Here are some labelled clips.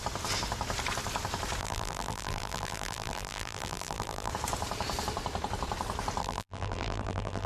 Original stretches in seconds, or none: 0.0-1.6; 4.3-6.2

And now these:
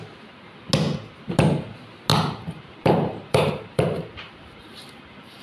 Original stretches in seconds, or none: 0.0-2.1

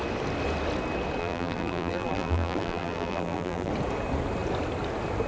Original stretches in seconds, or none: 0.0-1.2; 3.7-5.3

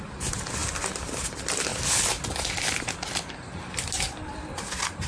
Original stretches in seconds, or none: 0.0-5.1

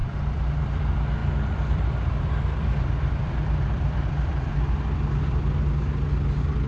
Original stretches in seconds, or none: 0.6-1.2; 4.5-6.7

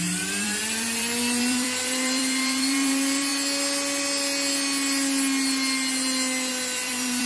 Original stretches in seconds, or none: 3.3-6.5

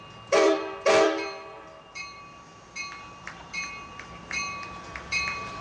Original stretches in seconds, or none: 2.5-3.2